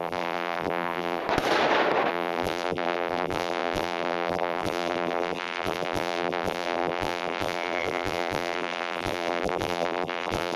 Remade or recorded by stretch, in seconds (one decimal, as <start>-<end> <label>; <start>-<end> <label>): 0.0-1.2 remade; 1.2-2.1 recorded; 2.1-10.6 remade